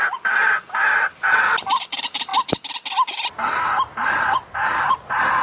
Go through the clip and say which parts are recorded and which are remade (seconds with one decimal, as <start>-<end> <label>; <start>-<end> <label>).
0.0-0.4 remade; 0.4-1.0 recorded; 1.0-2.3 remade; 2.3-4.2 recorded; 4.2-5.4 remade